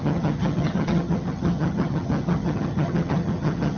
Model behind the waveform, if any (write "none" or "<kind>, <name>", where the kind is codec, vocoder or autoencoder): vocoder, HiFi-GAN